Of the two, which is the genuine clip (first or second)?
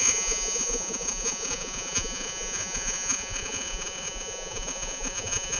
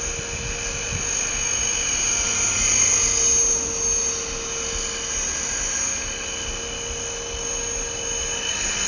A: second